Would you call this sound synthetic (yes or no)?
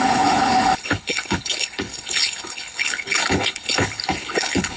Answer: yes